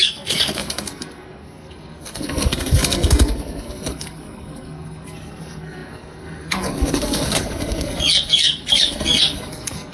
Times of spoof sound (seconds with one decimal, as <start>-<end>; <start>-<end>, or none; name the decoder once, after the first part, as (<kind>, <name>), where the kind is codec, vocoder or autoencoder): 0.0-9.9 (codec, SNAC)